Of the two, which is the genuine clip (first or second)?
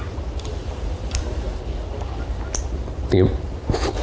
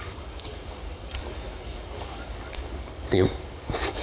first